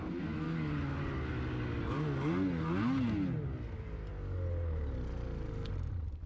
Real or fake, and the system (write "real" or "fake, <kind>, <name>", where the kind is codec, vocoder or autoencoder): real